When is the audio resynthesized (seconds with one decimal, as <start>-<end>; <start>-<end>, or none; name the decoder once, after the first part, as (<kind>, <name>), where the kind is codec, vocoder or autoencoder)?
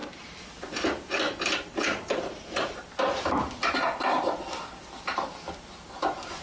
0.0-2.9 (vocoder, BigVGAN v2)